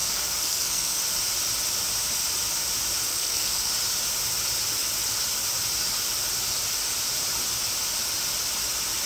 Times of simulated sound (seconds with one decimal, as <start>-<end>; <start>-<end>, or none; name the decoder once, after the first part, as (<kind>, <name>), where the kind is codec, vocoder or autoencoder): 0.0-1.0 (codec, SNAC); 3.1-3.7